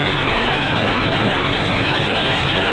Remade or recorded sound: remade